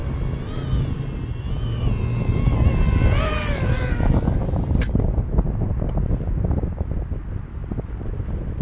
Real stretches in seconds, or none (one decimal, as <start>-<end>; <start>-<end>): 0.0-8.6

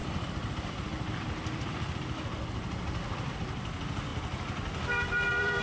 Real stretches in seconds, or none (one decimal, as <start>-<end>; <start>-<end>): 3.4-4.1

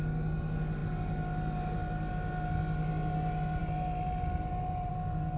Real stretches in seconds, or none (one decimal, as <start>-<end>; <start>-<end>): 0.0-5.4